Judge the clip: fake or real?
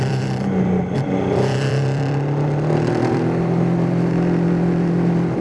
fake